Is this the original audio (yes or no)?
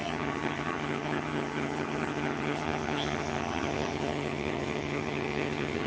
no